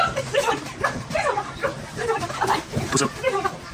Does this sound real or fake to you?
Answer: fake